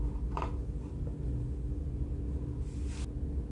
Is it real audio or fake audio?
real